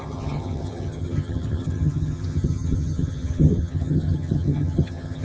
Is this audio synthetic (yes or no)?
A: yes